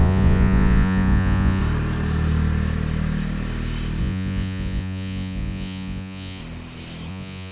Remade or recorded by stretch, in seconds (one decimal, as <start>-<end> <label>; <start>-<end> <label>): 0.0-1.6 remade; 1.6-4.0 recorded; 4.0-6.4 remade; 6.4-7.1 recorded; 7.1-7.5 remade